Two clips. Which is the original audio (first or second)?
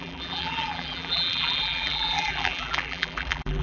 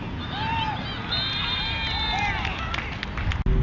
second